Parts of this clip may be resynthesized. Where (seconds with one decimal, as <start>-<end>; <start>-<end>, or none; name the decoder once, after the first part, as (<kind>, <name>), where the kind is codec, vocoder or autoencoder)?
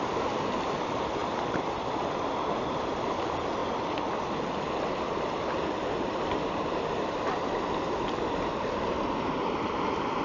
none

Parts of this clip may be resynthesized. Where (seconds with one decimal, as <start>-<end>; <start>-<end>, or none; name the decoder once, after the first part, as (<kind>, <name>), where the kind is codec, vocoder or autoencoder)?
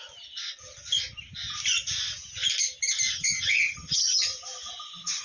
3.1-4.3 (vocoder, HiFi-GAN)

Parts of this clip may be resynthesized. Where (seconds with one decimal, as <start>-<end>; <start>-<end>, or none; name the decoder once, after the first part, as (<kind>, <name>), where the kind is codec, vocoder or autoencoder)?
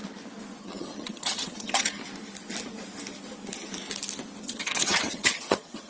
0.6-2.0 (vocoder, HiFi-GAN); 4.4-5.9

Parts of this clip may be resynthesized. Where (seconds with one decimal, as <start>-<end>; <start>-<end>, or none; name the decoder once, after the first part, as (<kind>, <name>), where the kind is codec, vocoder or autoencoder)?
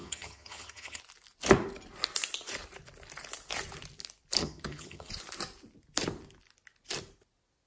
0.0-1.0 (vocoder, HiFi-GAN); 4.4-5.1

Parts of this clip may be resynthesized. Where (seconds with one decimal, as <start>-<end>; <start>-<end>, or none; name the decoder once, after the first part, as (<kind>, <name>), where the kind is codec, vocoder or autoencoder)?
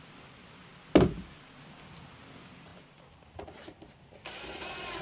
none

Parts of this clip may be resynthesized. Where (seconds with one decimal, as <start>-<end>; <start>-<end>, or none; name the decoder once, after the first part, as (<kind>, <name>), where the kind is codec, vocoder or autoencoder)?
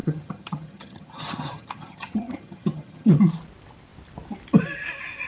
0.0-3.2 (vocoder, HiFi-GAN)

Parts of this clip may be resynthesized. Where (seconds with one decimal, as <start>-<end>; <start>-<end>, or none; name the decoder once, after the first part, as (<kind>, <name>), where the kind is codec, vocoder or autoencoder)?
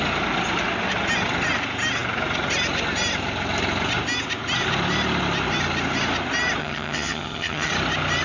6.6-7.7 (vocoder, HiFi-GAN)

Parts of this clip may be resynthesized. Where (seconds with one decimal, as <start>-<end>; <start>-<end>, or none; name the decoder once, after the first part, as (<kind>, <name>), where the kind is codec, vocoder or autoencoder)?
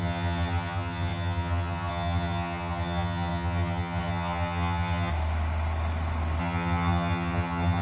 0.0-5.1 (vocoder, HiFi-GAN); 6.4-7.8